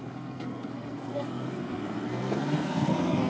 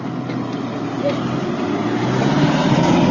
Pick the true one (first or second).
second